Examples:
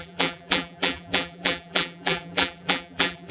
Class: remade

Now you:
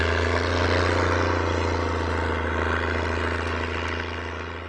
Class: recorded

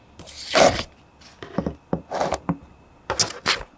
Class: recorded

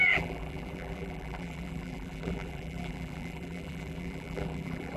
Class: remade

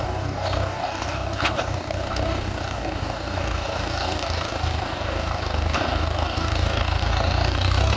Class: remade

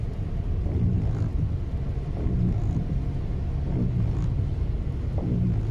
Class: recorded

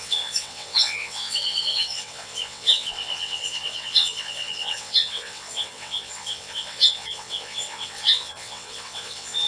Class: remade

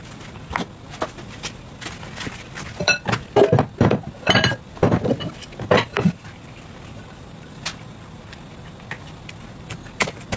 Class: recorded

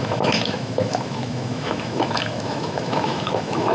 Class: remade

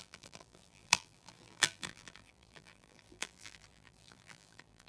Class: remade